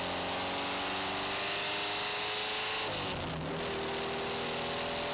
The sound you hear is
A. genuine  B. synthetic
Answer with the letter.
A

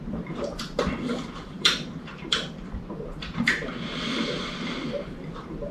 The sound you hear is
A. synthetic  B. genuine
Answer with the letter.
A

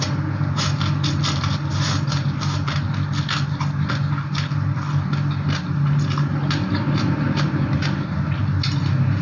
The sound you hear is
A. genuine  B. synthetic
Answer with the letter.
A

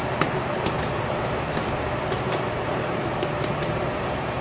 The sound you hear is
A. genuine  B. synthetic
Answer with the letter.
B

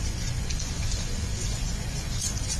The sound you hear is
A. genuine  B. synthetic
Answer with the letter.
B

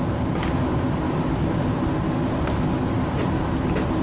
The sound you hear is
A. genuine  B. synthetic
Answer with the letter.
A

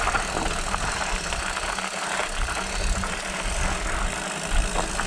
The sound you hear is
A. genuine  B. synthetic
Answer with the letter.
A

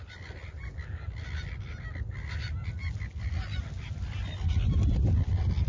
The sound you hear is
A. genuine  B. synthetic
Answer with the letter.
A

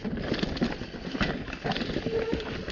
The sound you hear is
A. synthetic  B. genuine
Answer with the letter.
B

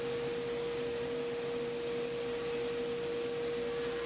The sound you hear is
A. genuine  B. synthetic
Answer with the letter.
A